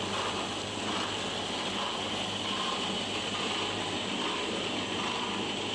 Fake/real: real